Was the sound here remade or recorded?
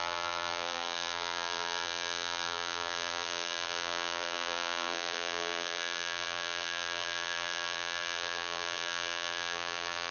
remade